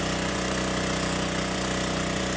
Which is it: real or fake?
fake